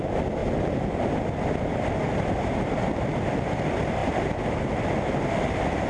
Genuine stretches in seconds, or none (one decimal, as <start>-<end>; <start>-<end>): 0.4-1.8; 4.0-5.9